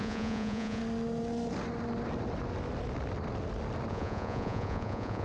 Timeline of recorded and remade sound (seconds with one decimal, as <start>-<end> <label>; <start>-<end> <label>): 0.0-0.8 remade; 0.8-3.9 recorded; 3.9-5.2 remade